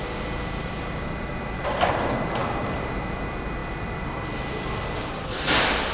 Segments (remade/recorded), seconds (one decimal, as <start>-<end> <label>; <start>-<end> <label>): 0.0-5.9 recorded